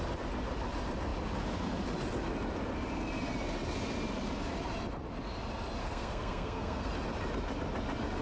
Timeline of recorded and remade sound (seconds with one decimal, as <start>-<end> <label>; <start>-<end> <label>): 0.0-5.8 recorded; 5.8-6.9 remade; 6.9-8.2 recorded